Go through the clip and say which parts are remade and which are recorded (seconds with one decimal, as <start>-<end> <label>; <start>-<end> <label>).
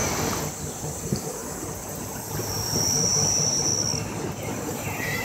0.0-0.8 recorded; 0.8-1.4 remade; 1.4-2.3 recorded; 2.3-3.7 remade; 3.7-4.3 recorded; 4.3-5.2 remade